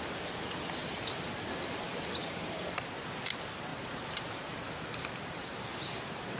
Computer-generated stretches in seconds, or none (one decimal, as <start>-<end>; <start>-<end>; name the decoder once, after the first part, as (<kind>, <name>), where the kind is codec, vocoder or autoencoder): 0.8-1.4 (vocoder, BigVGAN v2); 2.2-2.9; 3.7-5.6